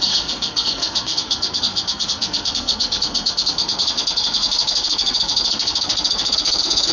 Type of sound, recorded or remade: remade